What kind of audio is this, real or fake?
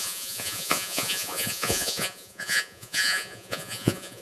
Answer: fake